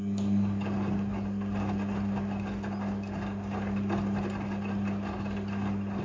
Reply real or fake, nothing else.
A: real